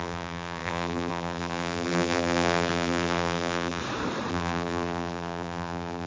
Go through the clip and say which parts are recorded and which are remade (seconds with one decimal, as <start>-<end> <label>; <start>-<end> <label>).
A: 0.0-3.8 remade; 3.8-4.3 recorded; 4.3-6.1 remade